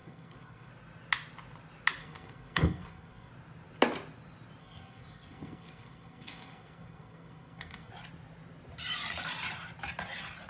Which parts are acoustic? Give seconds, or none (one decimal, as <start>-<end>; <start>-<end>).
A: 0.7-2.0; 3.3-4.6; 7.9-10.5